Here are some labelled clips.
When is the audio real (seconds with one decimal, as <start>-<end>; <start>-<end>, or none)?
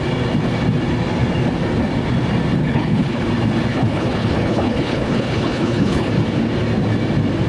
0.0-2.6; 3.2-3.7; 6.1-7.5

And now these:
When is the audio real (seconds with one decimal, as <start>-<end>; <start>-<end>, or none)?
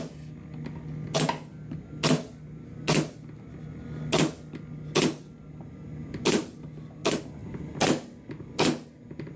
0.0-9.4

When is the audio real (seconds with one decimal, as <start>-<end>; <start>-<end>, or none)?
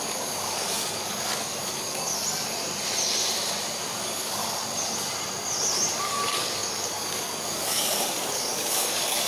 2.1-4.0; 4.4-6.0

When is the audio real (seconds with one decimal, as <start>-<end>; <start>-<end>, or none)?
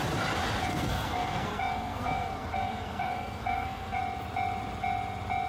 0.0-0.7; 4.0-5.5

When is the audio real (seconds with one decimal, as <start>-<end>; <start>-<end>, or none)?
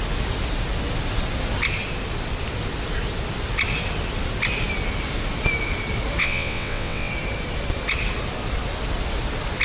0.0-6.2; 7.1-9.6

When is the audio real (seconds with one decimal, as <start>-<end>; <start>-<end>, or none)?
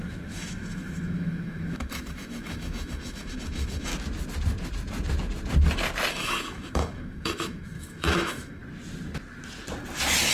3.9-6.1; 8.6-10.3